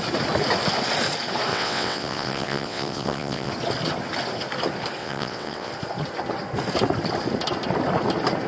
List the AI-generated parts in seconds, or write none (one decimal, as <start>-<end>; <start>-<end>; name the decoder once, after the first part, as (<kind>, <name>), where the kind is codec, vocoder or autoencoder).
1.5-3.5 (vocoder, WaveNeXt); 5.0-5.7